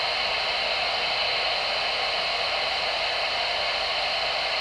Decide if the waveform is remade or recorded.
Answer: recorded